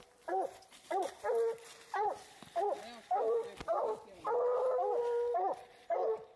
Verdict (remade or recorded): recorded